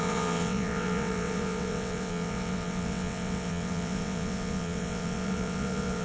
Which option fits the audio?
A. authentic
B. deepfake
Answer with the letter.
B